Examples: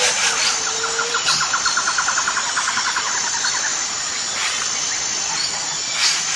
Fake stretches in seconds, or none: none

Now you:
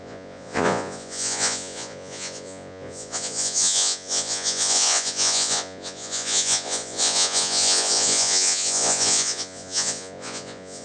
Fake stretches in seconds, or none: 0.0-10.8 (vocoder, Vocos)

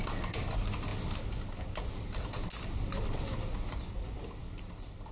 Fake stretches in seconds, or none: none

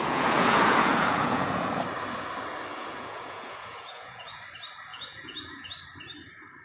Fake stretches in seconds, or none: 0.0-1.8 (vocoder, Vocos); 2.7-4.4; 4.9-5.7

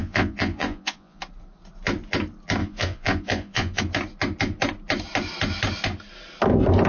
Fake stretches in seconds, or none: 0.0-1.2 (vocoder, Vocos); 2.6-3.8

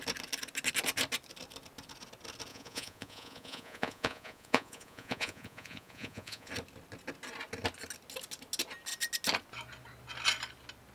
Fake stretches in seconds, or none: 2.5-6.5 (vocoder, Vocos)

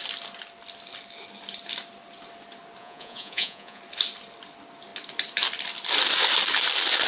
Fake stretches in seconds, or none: 2.8-3.8 (vocoder, Vocos)